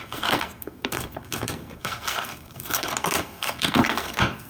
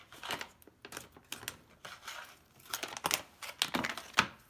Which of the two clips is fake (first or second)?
first